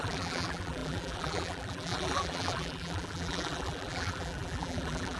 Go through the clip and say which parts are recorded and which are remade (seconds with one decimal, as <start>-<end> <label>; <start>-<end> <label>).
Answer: 0.0-5.2 remade